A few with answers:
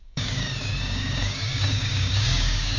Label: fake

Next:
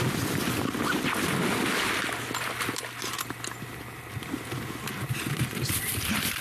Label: real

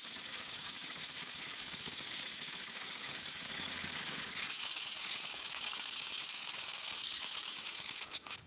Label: fake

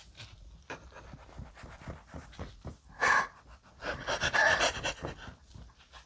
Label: real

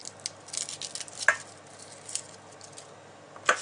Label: real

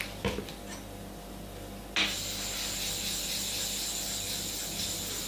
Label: real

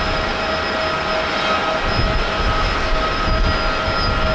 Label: real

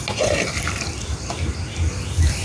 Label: real